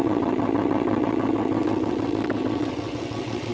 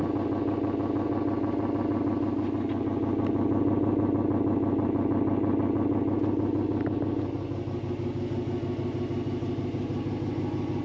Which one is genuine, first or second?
second